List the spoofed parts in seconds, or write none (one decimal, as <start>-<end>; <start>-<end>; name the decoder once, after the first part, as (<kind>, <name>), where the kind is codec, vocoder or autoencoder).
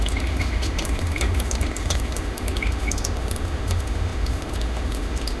0.0-5.4 (autoencoder, DAC-VAE)